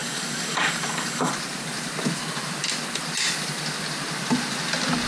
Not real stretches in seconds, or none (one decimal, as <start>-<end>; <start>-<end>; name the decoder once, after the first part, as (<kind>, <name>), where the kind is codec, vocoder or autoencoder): 0.0-1.3 (codec, DAC)